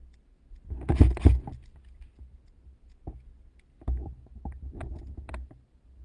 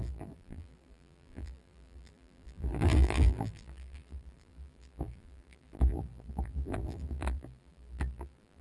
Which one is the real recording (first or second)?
first